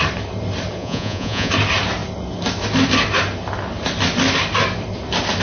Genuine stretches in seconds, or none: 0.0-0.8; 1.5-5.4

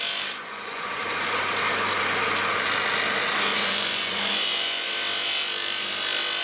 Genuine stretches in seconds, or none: 0.0-0.4; 1.0-3.5; 4.9-6.4